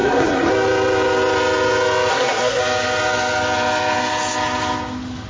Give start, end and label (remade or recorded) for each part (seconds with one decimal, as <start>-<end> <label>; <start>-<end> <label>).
0.0-0.5 remade; 0.5-2.1 recorded; 2.1-2.6 remade; 2.6-5.3 recorded